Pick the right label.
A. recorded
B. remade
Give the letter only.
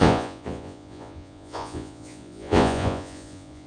B